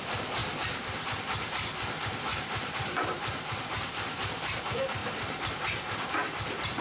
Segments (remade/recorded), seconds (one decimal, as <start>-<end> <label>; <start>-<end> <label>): 0.0-0.4 recorded; 0.4-1.2 remade; 1.2-2.3 recorded; 2.3-4.6 remade; 4.6-5.0 recorded; 5.0-5.5 remade; 5.5-6.8 recorded